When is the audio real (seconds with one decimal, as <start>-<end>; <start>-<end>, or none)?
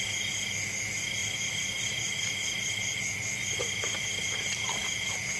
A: 0.0-5.4